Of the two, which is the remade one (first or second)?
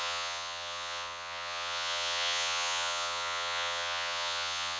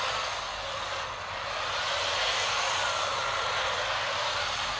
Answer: first